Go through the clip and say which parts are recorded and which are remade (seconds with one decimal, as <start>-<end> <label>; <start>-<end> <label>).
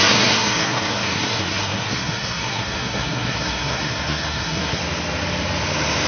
0.0-4.8 remade; 4.8-6.1 recorded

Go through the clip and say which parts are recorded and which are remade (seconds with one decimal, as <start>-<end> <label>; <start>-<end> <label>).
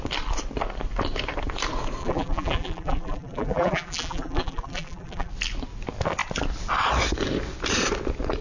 0.0-2.0 recorded; 2.0-5.3 remade; 5.3-8.4 recorded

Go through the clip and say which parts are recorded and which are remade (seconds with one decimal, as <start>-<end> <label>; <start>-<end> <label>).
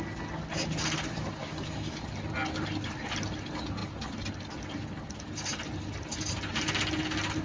0.0-1.4 recorded; 1.4-2.0 remade; 2.0-7.4 recorded